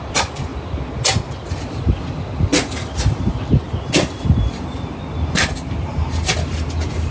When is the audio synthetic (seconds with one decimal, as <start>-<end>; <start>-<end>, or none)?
none